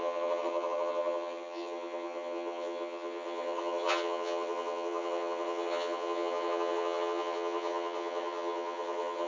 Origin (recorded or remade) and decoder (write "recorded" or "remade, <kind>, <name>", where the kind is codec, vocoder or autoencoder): remade, vocoder, HiFi-GAN